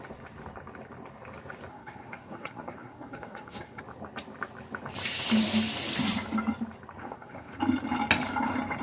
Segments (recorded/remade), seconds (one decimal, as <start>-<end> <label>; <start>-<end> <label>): 0.0-1.7 recorded; 1.7-3.8 remade; 3.8-7.0 recorded; 7.0-7.6 remade; 7.6-8.8 recorded